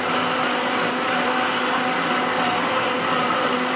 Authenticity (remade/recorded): recorded